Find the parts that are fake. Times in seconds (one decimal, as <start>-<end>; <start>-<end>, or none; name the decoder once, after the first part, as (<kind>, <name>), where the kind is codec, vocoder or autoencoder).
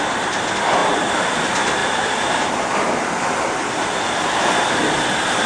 0.8-1.4 (vocoder, BigVGAN v2); 1.8-2.5